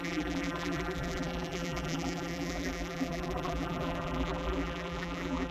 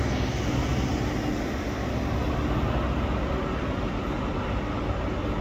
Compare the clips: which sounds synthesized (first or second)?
first